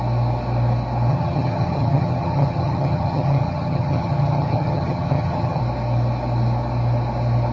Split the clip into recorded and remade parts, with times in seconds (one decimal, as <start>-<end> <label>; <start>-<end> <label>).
0.0-1.1 recorded; 1.1-5.6 remade; 5.6-7.5 recorded